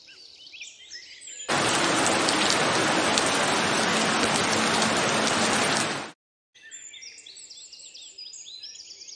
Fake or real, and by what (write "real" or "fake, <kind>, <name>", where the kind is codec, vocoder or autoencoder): real